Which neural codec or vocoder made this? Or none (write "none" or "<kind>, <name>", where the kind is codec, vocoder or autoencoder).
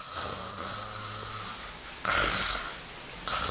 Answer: none